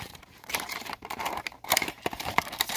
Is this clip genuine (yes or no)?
no